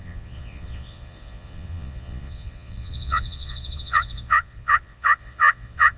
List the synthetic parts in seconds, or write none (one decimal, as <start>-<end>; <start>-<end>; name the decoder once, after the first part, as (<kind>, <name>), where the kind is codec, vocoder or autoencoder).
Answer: 0.0-6.0 (vocoder, Vocos)